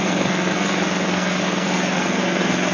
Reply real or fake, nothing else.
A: fake